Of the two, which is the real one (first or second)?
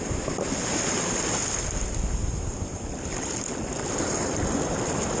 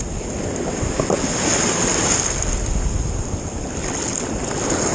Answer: second